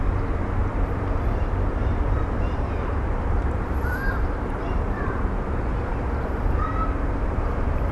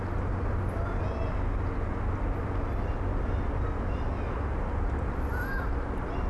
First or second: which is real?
second